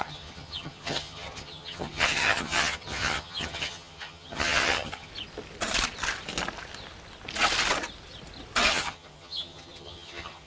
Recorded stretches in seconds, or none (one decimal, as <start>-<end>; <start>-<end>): 5.1-8.7